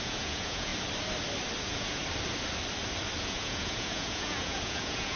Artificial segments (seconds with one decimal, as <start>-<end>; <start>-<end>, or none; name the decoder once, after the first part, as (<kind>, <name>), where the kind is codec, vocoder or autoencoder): 0.0-0.7 (vocoder, Vocos); 1.6-2.0; 3.2-5.2